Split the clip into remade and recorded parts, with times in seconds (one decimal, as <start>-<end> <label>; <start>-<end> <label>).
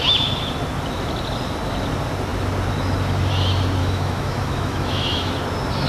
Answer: 0.0-3.8 recorded; 3.8-5.3 remade; 5.3-5.9 recorded